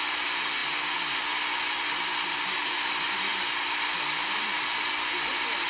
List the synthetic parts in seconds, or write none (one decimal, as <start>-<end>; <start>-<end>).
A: 3.3-4.9